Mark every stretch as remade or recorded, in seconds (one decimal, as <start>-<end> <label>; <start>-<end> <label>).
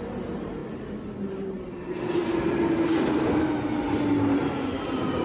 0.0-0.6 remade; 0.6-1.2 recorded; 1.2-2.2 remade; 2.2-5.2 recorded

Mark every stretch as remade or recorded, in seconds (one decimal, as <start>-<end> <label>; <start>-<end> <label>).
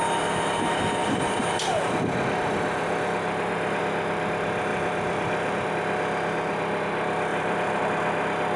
0.0-1.0 recorded; 1.0-3.8 remade; 3.8-4.7 recorded; 4.7-5.7 remade; 5.7-7.3 recorded; 7.3-7.8 remade; 7.8-8.6 recorded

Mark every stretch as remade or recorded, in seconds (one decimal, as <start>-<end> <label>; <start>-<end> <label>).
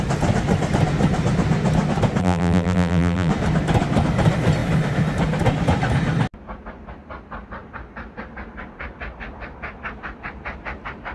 0.0-2.2 recorded; 2.2-3.3 remade; 3.3-11.1 recorded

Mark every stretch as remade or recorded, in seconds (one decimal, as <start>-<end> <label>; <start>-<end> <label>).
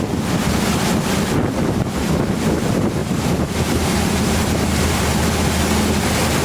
0.0-3.0 recorded; 3.0-5.2 remade; 5.2-6.4 recorded